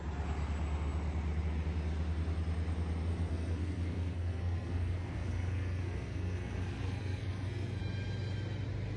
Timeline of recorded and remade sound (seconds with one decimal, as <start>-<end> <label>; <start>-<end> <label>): 0.0-3.1 recorded; 3.1-7.8 remade; 7.8-9.0 recorded